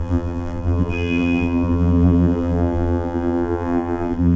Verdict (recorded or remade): remade